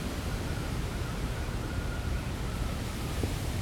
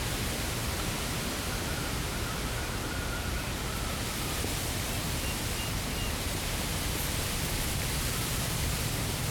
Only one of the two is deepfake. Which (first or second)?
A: first